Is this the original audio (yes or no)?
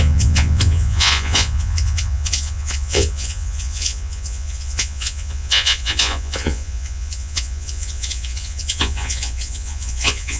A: no